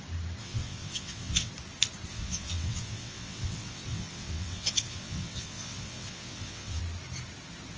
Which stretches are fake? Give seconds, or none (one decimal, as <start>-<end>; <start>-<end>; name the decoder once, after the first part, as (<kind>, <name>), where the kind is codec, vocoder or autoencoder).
0.4-1.5 (vocoder, WaveNeXt); 2.1-6.8